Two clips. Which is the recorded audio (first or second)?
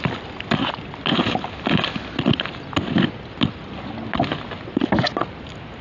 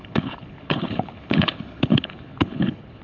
first